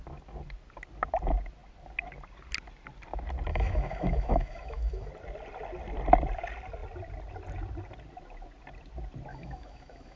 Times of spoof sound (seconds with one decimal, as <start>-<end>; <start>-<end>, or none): 3.5-5.1; 9.3-10.2